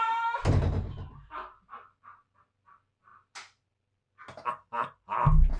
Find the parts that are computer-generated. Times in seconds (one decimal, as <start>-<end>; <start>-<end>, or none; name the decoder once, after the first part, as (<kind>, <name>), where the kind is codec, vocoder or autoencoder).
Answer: none